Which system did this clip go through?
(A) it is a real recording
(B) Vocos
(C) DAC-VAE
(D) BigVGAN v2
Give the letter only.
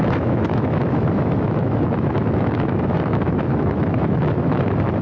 C